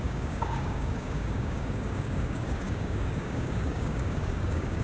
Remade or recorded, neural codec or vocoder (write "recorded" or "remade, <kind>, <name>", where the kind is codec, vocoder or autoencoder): remade, codec, DAC